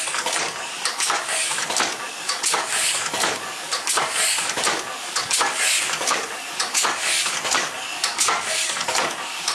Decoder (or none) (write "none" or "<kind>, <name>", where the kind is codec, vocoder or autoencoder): codec, DAC